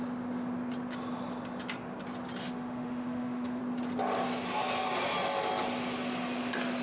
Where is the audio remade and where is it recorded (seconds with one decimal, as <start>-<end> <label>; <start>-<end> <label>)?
0.0-2.4 recorded; 2.4-3.6 remade; 3.6-6.8 recorded